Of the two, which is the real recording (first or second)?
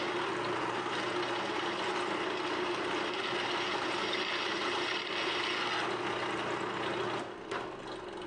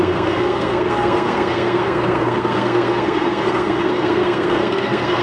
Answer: first